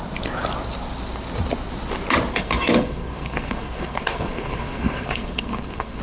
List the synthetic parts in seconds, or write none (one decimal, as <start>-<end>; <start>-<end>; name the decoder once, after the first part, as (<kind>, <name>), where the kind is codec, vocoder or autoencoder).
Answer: 2.3-6.0 (codec, SNAC)